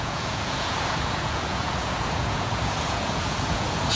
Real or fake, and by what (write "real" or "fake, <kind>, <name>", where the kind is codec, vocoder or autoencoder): fake, vocoder, Vocos